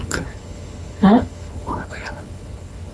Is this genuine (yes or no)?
no